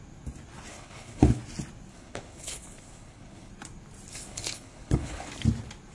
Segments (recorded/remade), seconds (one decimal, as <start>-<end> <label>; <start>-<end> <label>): 0.0-0.7 recorded; 0.7-1.4 remade; 1.4-1.9 recorded; 1.9-3.5 remade; 3.5-4.1 recorded; 4.1-5.3 remade; 5.3-5.9 recorded